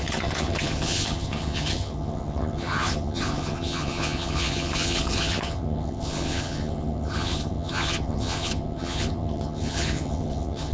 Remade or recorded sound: remade